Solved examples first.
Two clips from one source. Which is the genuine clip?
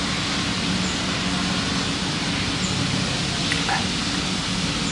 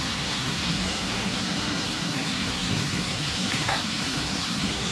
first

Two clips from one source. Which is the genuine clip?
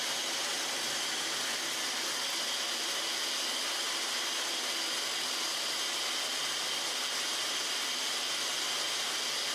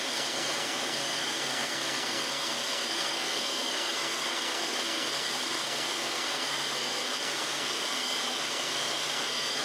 first